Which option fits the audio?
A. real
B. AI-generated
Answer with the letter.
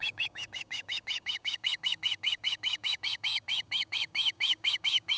B